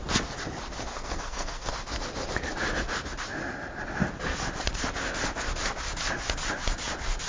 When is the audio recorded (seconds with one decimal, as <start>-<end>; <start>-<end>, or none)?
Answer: 0.0-0.9; 1.7-7.3